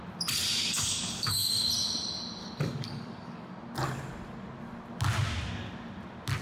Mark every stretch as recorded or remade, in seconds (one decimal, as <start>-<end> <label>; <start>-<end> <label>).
0.0-0.6 recorded; 0.6-1.7 remade; 1.7-2.4 recorded; 2.4-3.5 remade; 3.5-6.4 recorded

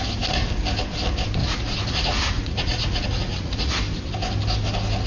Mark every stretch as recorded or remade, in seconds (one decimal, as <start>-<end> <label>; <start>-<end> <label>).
0.0-1.4 recorded; 1.4-3.7 remade; 3.7-5.1 recorded

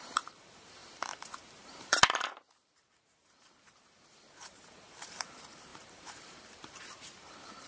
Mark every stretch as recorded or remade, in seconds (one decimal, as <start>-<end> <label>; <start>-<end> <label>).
0.0-7.7 remade

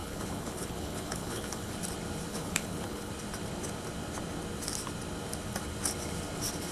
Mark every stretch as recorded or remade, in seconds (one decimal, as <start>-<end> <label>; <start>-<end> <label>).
0.0-1.7 remade; 1.7-2.3 recorded; 2.3-3.1 remade; 3.1-6.7 recorded

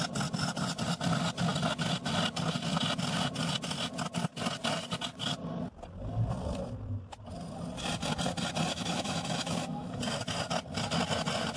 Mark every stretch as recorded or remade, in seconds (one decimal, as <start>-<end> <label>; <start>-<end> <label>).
0.0-8.7 recorded; 8.7-10.0 remade; 10.0-11.6 recorded

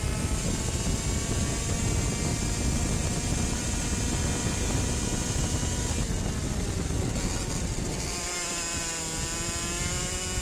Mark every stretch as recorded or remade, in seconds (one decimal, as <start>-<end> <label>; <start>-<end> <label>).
0.0-10.4 recorded

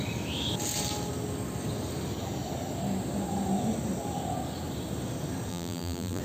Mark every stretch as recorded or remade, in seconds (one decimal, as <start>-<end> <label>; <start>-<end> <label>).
0.0-5.5 recorded; 5.5-6.2 remade